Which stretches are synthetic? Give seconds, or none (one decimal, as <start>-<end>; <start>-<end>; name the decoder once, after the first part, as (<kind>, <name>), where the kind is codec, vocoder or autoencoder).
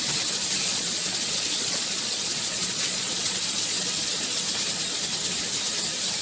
0.7-4.4 (vocoder, Vocos)